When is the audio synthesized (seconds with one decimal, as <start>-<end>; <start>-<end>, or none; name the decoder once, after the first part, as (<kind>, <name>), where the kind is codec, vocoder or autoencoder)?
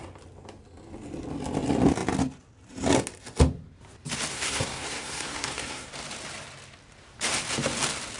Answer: 4.3-5.9 (codec, SNAC)